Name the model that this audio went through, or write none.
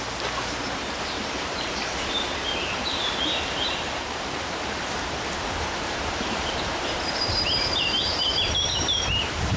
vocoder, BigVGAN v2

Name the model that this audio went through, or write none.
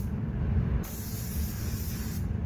vocoder, BigVGAN v2